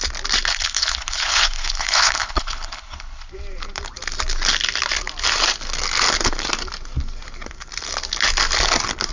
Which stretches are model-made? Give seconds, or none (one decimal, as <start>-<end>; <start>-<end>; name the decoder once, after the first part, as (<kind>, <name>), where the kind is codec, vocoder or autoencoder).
0.5-3.3 (codec, HILCodec)